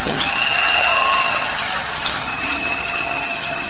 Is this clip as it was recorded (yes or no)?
no